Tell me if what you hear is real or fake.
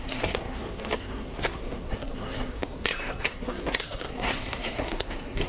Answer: fake